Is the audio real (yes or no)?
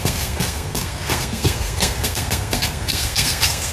no